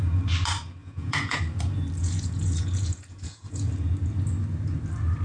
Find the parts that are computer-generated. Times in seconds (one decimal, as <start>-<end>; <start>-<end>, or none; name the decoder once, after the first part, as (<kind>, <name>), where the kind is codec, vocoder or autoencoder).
0.8-1.4 (vocoder, Vocos); 2.0-3.7